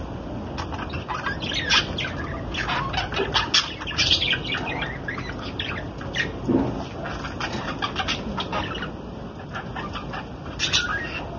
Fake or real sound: real